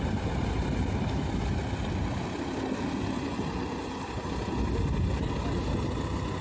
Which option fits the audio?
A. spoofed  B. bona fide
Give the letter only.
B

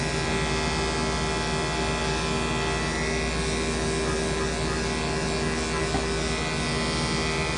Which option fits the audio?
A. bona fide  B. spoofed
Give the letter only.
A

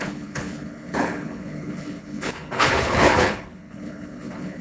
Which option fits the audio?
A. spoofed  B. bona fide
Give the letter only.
A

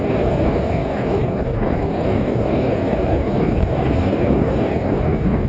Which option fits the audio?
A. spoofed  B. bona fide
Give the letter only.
A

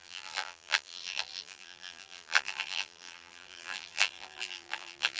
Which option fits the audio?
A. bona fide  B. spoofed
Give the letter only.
B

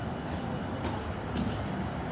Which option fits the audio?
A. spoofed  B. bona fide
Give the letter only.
B